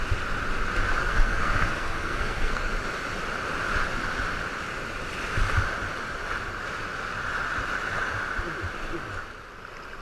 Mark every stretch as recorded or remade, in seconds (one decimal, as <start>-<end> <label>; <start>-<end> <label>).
0.0-1.0 recorded; 1.0-2.7 remade; 2.7-10.0 recorded